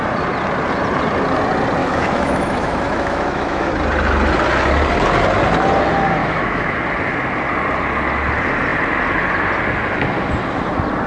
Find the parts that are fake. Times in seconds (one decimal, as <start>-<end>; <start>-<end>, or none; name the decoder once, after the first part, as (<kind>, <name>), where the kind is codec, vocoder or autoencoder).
1.8-3.7 (autoencoder, DAC-VAE); 6.2-6.8